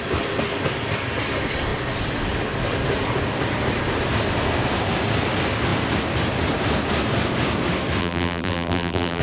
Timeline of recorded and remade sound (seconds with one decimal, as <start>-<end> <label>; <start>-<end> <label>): 0.0-8.0 recorded; 8.0-9.2 remade